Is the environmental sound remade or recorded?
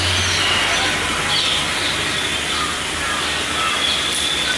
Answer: recorded